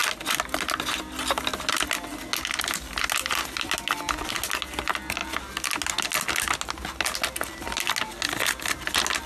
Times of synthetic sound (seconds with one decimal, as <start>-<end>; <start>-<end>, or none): none